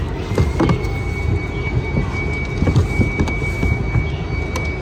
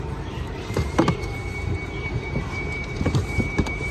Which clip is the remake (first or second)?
second